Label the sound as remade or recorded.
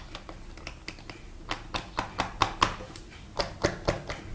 recorded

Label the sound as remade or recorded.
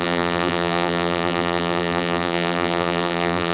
remade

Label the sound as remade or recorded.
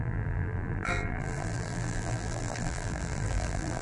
remade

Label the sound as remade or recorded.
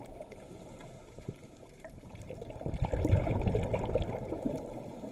remade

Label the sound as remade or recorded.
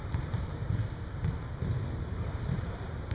remade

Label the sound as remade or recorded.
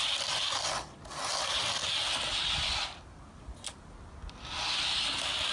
recorded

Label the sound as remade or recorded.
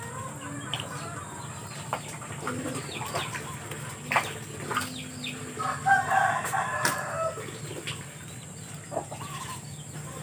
recorded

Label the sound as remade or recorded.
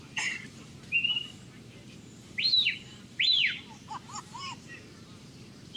remade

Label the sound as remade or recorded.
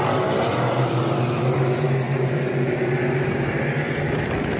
remade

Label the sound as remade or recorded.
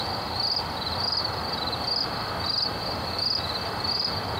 recorded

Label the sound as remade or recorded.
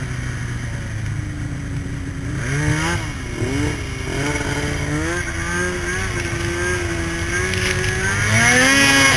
recorded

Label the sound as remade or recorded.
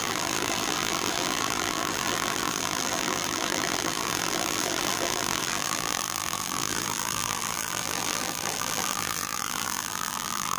remade